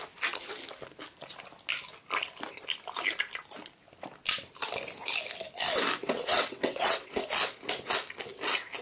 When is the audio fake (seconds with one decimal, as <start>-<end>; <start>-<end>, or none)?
6.0-7.2